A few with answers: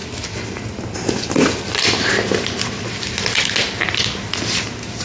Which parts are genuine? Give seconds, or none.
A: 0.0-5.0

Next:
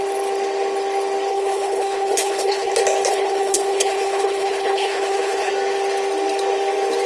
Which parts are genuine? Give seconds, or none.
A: 0.0-1.3; 2.7-3.1; 5.5-7.1

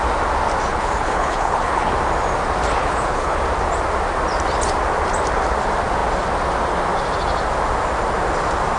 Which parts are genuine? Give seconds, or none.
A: 0.0-0.7; 1.9-2.8; 3.4-8.8

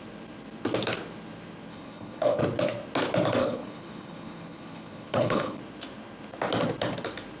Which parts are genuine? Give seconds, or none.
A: 0.0-1.7; 2.4-3.4; 5.6-7.4